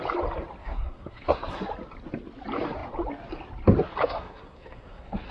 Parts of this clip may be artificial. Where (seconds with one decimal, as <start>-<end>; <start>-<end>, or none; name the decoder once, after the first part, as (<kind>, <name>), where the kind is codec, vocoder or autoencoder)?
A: 0.6-1.7 (codec, SNAC); 4.0-5.3